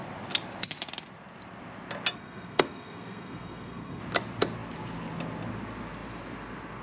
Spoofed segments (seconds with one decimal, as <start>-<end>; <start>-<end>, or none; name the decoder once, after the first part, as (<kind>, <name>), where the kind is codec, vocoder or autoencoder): 2.1-4.0 (codec, SNAC)